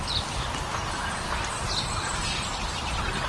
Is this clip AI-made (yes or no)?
no